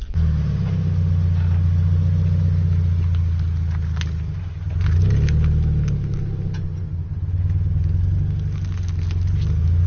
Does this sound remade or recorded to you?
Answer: recorded